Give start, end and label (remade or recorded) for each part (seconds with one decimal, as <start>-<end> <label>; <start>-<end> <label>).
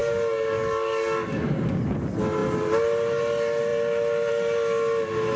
0.0-1.8 remade; 1.8-5.4 recorded